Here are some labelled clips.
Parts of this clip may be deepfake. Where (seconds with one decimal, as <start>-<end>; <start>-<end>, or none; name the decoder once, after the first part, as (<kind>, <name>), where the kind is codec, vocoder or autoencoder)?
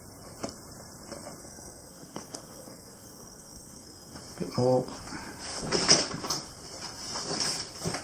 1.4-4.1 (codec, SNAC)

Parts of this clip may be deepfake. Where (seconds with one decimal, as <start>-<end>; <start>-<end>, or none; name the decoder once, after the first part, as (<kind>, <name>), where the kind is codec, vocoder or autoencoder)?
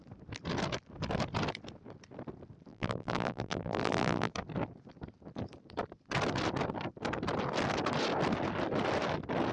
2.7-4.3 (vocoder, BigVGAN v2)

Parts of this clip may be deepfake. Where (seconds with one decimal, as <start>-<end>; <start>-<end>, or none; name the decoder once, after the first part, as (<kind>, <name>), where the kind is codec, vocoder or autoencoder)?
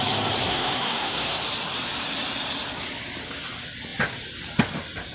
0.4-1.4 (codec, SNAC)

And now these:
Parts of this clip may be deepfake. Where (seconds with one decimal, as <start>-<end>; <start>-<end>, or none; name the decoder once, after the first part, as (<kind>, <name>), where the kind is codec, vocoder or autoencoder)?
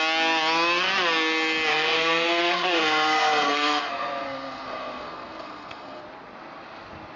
1.7-6.0 (codec, SNAC)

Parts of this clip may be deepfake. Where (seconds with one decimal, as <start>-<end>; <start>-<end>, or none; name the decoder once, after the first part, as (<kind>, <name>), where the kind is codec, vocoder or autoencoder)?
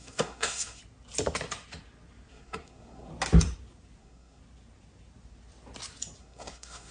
0.0-0.8 (codec, SNAC); 2.3-3.1; 4.0-4.4; 6.2-6.9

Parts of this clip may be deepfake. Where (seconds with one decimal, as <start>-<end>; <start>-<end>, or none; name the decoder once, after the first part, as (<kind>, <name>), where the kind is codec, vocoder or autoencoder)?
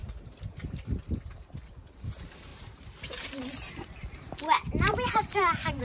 2.5-5.8 (vocoder, BigVGAN v2)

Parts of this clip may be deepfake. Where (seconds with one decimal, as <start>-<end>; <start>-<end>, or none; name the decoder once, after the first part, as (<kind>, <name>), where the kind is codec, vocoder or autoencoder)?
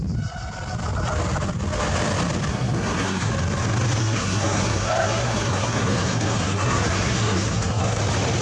2.5-3.3 (codec, SNAC); 4.0-8.0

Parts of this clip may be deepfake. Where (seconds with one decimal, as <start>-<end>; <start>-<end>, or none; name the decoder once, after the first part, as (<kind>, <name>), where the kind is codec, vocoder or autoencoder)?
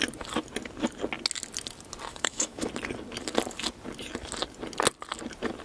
2.1-2.7 (autoencoder, DAC-VAE)